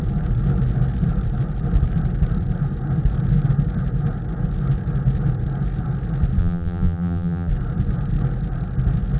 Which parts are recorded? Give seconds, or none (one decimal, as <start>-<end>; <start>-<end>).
0.0-6.4; 7.5-9.2